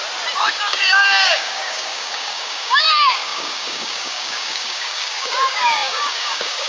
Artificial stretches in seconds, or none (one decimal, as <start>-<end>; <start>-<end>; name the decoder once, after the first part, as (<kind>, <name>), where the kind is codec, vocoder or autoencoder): 0.5-6.7 (codec, DAC)